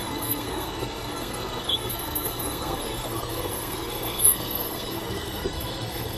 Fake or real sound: fake